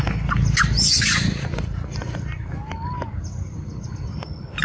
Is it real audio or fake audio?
real